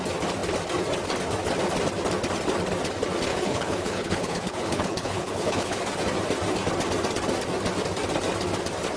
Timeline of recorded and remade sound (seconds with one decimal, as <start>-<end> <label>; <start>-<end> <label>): 0.0-3.3 recorded; 3.3-5.8 remade; 5.8-9.0 recorded